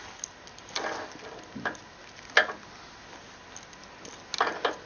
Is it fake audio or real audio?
real